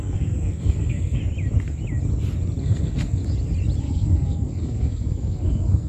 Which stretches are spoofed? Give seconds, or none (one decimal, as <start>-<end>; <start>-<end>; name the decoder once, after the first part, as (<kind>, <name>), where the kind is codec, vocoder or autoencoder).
0.0-1.2 (codec, SNAC); 2.6-3.2; 3.8-5.9